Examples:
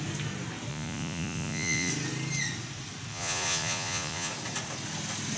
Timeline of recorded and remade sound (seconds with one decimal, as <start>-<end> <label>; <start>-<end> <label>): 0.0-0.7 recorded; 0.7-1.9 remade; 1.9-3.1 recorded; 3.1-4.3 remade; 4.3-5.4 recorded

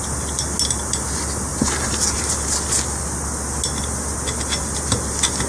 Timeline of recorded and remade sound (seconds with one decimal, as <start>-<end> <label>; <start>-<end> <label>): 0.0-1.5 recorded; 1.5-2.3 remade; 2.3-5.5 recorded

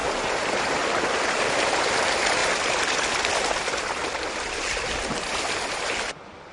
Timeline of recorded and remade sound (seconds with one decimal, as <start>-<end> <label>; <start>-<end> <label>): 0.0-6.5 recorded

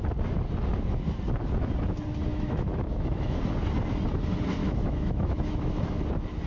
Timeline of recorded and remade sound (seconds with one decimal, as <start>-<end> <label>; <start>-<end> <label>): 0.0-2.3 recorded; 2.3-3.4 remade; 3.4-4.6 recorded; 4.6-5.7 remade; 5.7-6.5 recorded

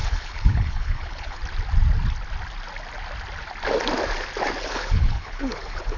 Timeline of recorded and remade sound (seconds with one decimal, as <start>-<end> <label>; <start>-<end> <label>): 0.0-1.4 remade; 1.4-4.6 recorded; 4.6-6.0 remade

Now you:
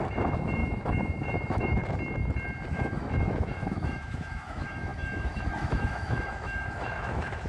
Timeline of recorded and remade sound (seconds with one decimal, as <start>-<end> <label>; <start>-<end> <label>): 0.0-1.8 remade; 1.8-2.7 recorded; 2.7-7.5 remade

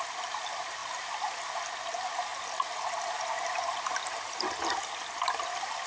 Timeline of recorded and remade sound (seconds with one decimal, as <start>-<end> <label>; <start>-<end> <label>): 0.0-5.9 recorded

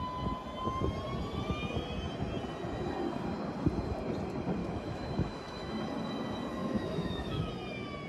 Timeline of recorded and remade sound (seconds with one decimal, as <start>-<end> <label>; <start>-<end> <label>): 0.0-4.6 recorded; 4.6-5.8 remade; 5.8-6.6 recorded; 6.6-7.5 remade; 7.5-8.1 recorded